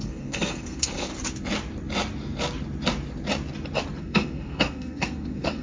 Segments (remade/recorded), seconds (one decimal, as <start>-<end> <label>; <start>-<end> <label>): 0.0-1.1 remade; 1.1-4.0 recorded; 4.0-5.6 remade